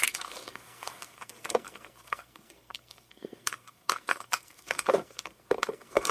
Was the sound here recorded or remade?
remade